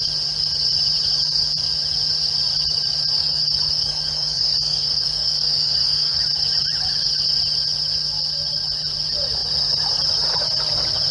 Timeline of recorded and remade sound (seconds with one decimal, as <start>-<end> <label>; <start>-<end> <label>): 0.0-3.2 recorded; 3.2-6.2 remade; 6.2-11.1 recorded